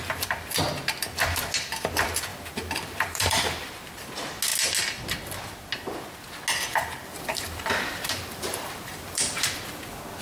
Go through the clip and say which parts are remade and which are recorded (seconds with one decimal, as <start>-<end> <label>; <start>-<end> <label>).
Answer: 0.0-2.3 recorded; 2.3-3.9 remade; 3.9-6.7 recorded; 6.7-9.5 remade; 9.5-10.2 recorded